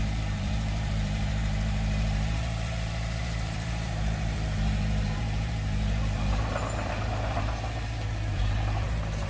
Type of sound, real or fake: fake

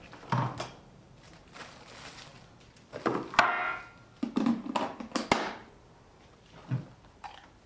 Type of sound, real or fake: real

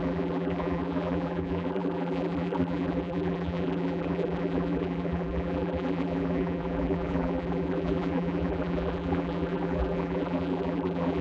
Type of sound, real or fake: fake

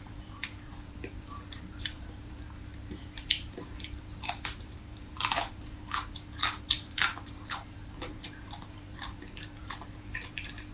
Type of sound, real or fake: fake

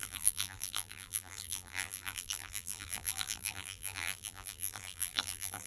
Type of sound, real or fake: fake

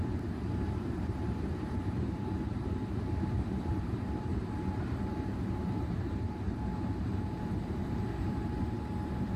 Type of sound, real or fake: fake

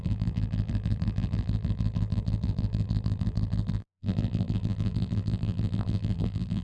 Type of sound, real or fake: fake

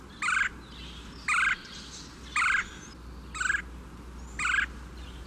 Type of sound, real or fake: real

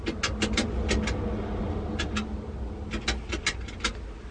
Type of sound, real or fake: real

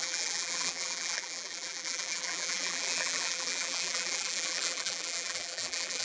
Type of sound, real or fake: fake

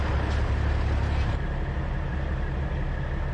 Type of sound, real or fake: real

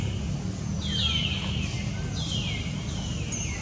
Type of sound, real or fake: real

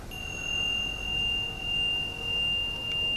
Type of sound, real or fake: real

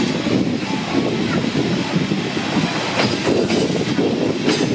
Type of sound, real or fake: real